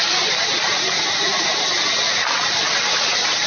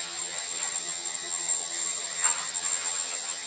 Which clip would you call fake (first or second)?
second